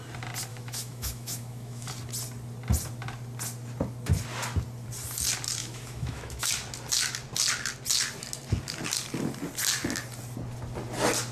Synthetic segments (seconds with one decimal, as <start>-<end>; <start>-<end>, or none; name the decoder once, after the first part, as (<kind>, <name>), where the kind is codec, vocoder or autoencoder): 0.5-1.9 (autoencoder, DAC-VAE); 5.6-6.5